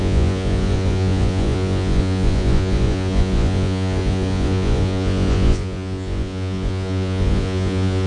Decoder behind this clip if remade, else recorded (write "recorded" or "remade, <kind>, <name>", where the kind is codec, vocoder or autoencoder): remade, vocoder, Vocos